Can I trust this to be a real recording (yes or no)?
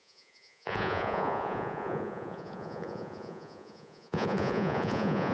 no